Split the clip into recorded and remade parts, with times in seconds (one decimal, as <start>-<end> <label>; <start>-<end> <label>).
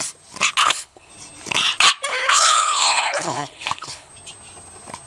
0.0-0.6 recorded; 0.6-1.1 remade; 1.1-2.1 recorded; 2.1-4.1 remade; 4.1-5.1 recorded